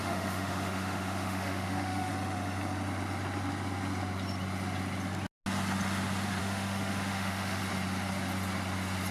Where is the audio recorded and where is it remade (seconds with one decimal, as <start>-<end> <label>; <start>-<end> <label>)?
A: 0.0-2.1 remade; 2.1-6.4 recorded; 6.4-7.6 remade; 7.6-9.1 recorded